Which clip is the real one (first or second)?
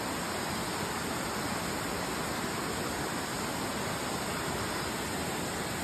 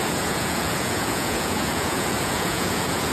first